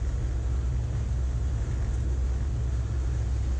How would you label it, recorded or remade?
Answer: recorded